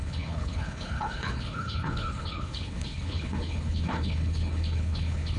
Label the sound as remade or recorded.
remade